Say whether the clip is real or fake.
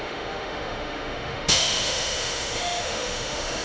fake